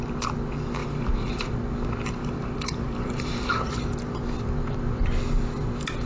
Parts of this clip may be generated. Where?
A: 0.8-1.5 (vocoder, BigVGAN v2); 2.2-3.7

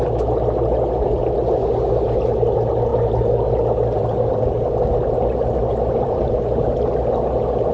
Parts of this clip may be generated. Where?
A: 4.0-4.7 (vocoder, BigVGAN v2); 5.7-6.2

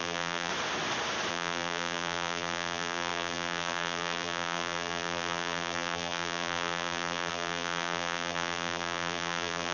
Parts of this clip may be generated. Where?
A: 0.0-0.5 (vocoder, BigVGAN v2); 1.3-9.7

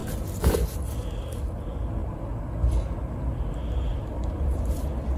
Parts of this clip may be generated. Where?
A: 2.0-2.5 (vocoder, BigVGAN v2); 3.9-4.8

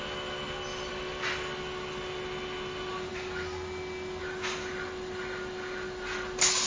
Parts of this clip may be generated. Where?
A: none